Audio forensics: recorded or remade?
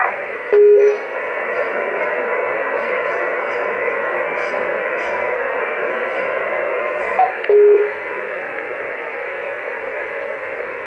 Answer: remade